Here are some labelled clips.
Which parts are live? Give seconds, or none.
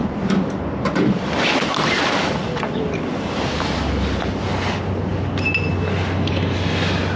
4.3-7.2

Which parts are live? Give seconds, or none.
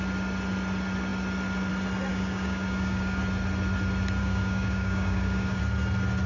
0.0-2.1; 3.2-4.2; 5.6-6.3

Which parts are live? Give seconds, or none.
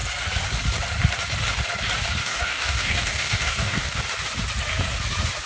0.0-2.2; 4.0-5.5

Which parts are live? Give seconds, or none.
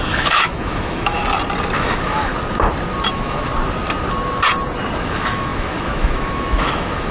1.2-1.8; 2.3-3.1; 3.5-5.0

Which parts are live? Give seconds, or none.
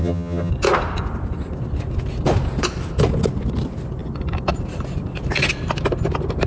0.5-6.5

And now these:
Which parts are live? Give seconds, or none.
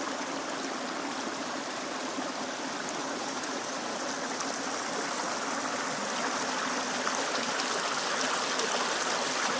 0.0-3.0; 4.0-9.6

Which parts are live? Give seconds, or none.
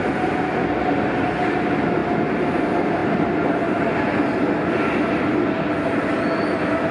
0.0-6.9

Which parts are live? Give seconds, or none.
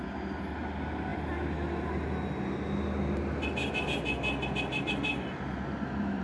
0.0-6.2